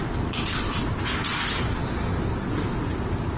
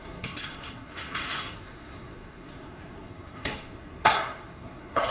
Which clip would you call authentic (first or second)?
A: first